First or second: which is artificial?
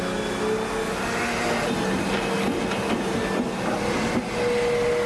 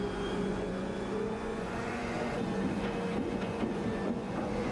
second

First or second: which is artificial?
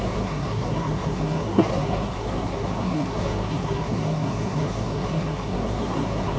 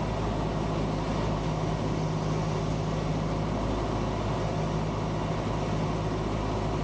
first